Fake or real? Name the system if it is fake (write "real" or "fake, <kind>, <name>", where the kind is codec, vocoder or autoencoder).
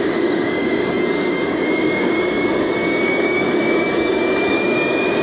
fake, codec, DAC